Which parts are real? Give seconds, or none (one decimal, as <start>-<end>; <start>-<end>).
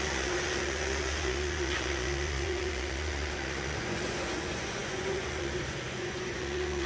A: none